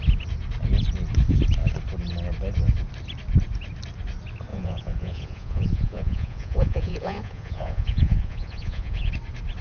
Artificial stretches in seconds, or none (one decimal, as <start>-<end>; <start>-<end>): 4.5-9.1